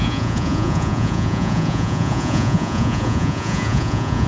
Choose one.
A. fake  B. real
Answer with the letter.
A